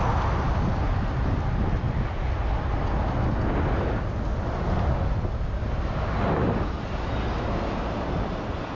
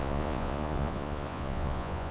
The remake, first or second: second